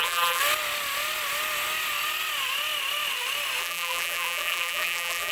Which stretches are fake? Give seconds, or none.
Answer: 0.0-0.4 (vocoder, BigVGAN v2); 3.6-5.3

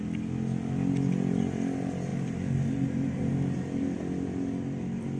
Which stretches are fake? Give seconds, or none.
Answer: 2.1-3.3 (vocoder, BigVGAN v2)

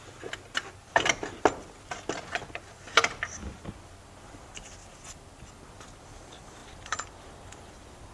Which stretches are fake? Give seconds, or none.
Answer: 6.6-8.1 (vocoder, BigVGAN v2)

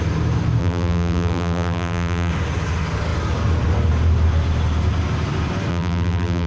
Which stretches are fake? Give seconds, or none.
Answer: 0.6-2.3 (vocoder, BigVGAN v2); 5.7-6.5

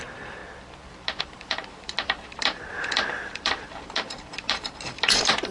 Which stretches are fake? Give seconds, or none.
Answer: 0.0-0.4 (vocoder, BigVGAN v2); 1.2-5.5